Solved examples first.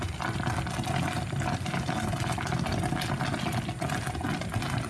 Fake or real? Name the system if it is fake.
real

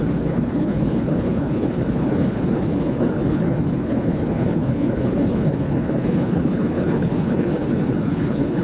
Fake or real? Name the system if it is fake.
fake, codec, HILCodec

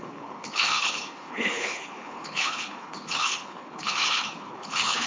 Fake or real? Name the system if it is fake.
fake, codec, HILCodec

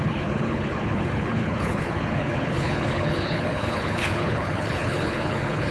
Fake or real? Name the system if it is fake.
fake, codec, HILCodec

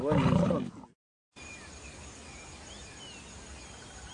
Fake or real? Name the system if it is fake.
real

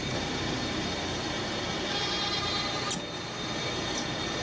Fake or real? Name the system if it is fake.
real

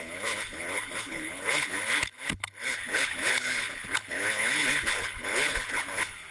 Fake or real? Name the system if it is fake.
fake, codec, HILCodec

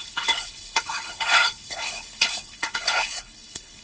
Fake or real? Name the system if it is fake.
fake, codec, HILCodec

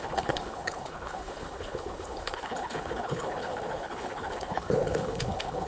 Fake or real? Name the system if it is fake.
fake, codec, HILCodec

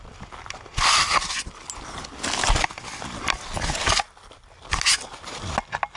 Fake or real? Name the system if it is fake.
real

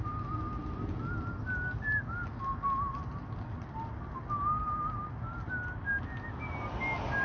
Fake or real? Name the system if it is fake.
real